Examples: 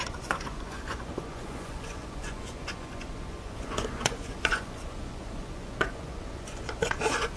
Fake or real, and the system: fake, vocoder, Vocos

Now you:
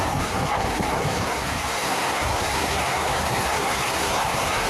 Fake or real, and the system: fake, codec, SNAC